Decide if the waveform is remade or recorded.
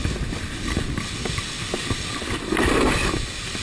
recorded